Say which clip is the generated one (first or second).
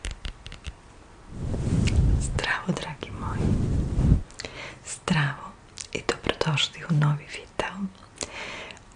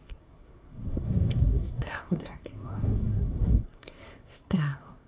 second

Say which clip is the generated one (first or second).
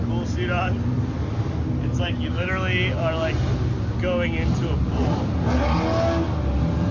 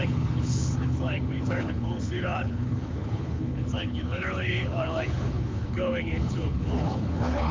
second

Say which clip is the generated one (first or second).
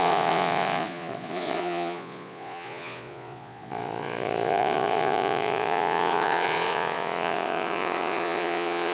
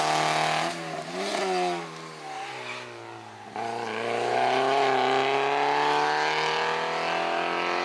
first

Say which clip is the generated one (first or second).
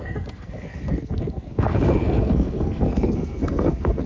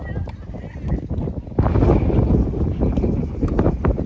first